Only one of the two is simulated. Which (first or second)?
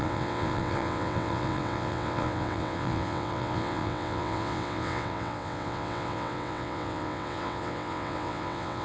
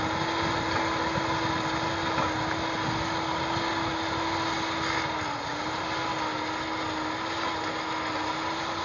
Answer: first